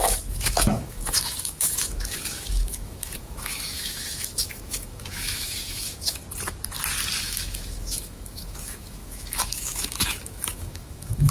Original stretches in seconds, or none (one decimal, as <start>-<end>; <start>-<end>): 6.2-7.2